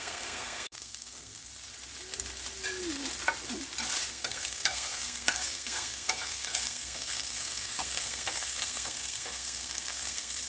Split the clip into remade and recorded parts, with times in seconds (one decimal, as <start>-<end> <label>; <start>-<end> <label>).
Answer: 0.0-1.5 remade; 1.5-4.1 recorded; 4.1-10.5 remade